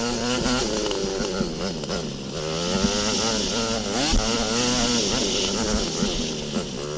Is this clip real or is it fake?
real